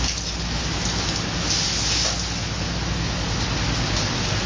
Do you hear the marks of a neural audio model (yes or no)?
no